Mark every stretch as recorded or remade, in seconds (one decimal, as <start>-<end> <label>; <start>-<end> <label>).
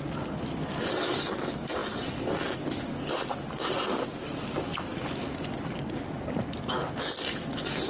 0.0-7.9 recorded